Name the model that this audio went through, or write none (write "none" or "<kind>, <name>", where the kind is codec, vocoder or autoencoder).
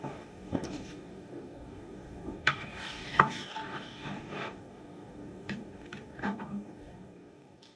codec, DAC